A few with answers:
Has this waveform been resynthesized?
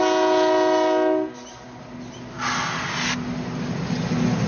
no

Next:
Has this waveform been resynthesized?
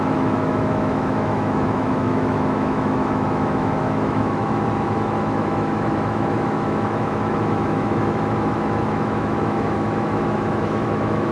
yes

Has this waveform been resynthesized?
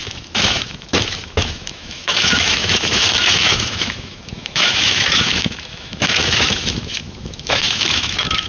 yes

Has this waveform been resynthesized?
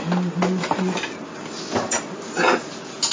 no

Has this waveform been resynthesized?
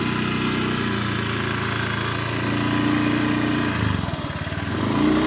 no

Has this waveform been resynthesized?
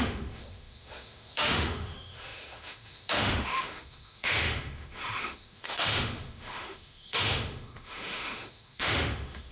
yes